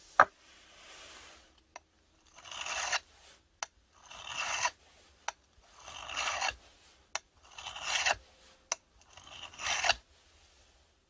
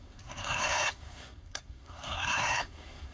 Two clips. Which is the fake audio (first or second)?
second